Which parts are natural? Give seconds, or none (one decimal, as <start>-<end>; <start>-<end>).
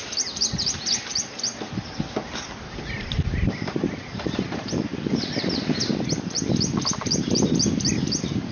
0.0-8.5